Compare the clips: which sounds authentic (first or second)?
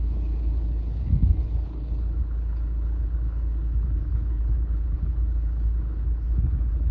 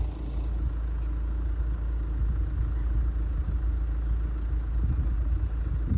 second